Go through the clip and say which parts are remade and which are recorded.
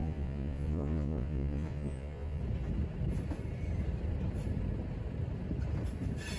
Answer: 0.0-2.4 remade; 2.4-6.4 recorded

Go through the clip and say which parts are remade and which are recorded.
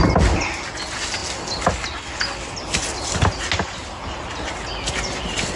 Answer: 0.0-5.6 recorded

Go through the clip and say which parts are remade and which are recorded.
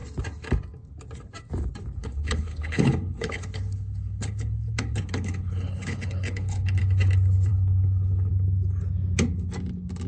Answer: 0.0-2.0 recorded; 2.0-6.8 remade; 6.8-7.5 recorded; 7.5-8.3 remade; 8.3-10.1 recorded